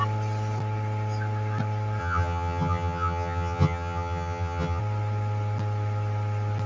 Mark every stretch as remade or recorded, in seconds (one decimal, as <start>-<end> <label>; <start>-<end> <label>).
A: 0.0-2.0 recorded; 2.0-4.8 remade; 4.8-6.7 recorded